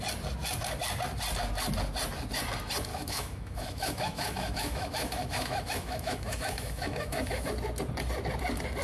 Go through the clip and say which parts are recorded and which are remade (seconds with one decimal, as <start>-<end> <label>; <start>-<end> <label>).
0.0-2.9 recorded; 2.9-7.5 remade; 7.5-8.8 recorded